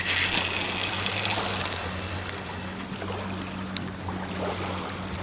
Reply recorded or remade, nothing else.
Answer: recorded